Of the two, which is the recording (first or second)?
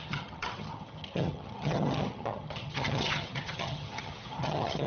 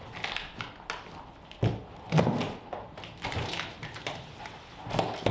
second